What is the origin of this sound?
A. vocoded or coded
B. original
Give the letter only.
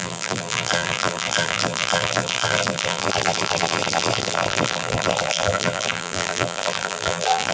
A